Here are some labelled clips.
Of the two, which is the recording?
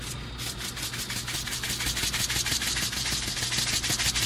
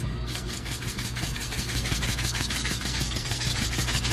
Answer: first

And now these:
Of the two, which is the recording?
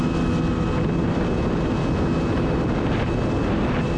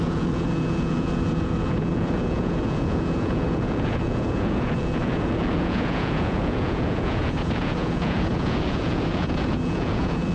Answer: first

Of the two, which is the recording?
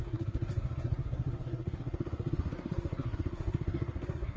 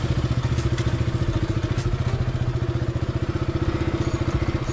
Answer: second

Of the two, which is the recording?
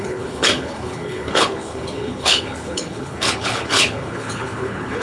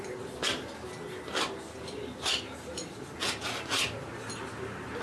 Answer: second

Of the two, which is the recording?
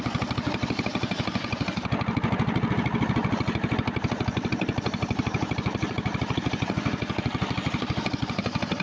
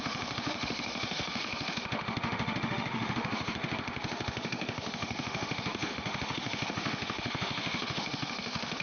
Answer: first